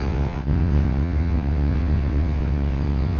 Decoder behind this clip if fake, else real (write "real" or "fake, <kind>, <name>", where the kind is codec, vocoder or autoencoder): fake, vocoder, WaveNeXt